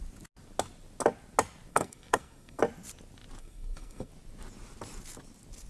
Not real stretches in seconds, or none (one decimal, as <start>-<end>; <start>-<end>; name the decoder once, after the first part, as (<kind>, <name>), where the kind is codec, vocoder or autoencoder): 1.7-2.6 (codec, SNAC); 3.4-4.1